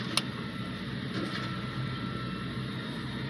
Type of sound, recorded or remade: recorded